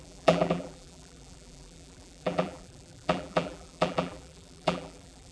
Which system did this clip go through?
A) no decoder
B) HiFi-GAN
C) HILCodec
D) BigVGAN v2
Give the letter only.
D